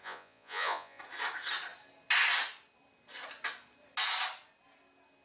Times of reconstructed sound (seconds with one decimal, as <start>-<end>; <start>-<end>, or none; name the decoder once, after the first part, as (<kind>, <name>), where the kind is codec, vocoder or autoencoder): 0.0-1.0 (vocoder, Vocos)